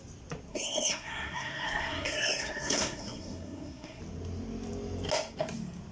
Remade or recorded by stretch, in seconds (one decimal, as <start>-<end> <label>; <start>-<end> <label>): 0.0-0.5 recorded; 0.5-4.0 remade; 4.0-5.9 recorded